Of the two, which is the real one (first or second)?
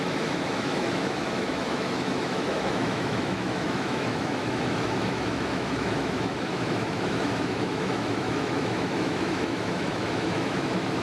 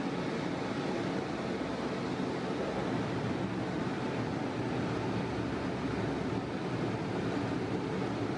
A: second